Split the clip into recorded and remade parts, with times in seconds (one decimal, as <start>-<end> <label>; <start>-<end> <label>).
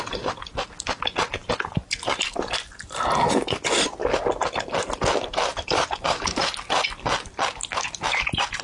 0.0-5.5 recorded; 5.5-6.4 remade; 6.4-8.6 recorded